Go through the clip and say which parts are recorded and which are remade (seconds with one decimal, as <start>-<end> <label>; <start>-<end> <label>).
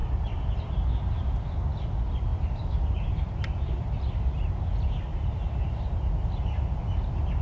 0.0-1.1 remade; 1.1-2.3 recorded; 2.3-3.4 remade; 3.4-7.4 recorded